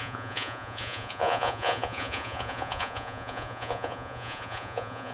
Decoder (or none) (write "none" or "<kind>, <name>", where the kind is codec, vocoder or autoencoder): vocoder, Vocos